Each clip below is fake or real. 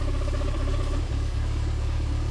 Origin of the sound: fake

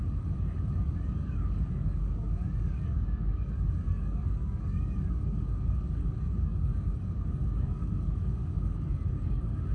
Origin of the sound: fake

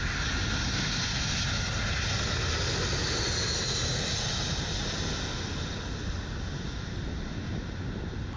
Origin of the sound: real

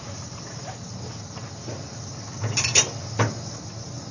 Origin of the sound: real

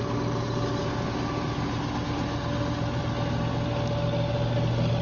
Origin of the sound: real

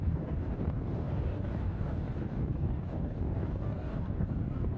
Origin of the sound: fake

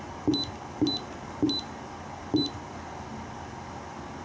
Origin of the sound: real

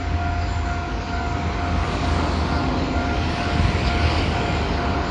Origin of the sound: fake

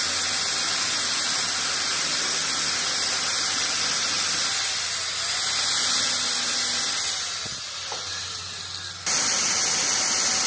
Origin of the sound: real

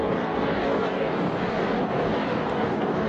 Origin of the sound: fake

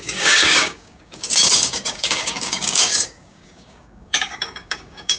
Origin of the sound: fake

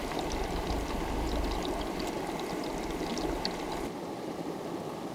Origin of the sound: real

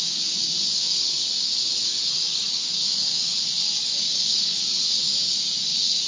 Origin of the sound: fake